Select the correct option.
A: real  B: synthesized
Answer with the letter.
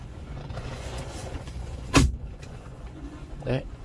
B